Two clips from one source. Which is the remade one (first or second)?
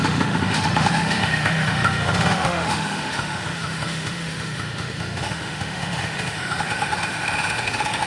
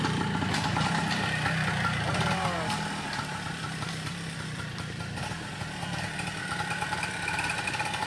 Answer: first